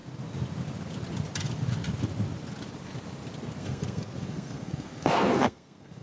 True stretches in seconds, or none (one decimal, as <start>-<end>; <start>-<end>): 0.0-3.6